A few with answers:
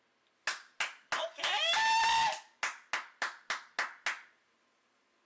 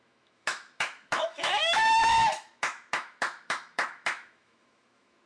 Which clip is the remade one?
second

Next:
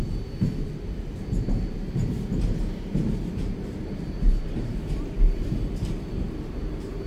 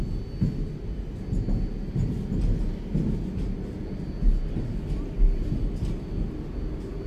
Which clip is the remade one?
first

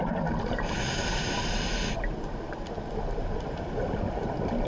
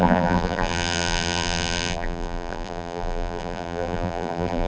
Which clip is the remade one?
second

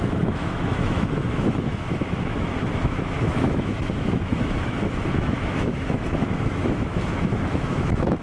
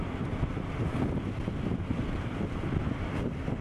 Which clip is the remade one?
first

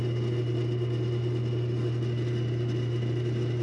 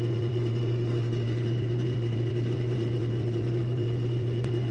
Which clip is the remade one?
second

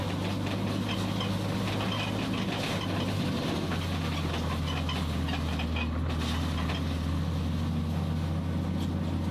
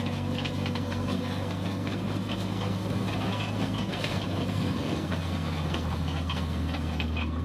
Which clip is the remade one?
second